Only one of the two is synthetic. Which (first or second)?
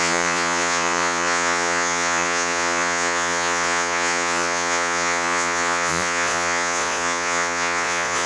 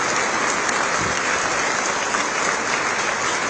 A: first